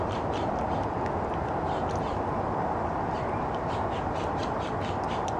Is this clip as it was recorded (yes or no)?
yes